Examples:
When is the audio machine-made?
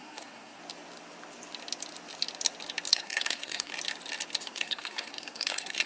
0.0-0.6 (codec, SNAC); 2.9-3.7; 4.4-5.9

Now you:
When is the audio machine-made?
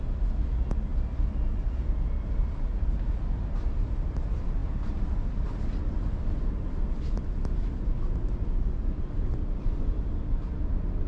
none